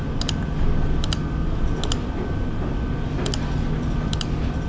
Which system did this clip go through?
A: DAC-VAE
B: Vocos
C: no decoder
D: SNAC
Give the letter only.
C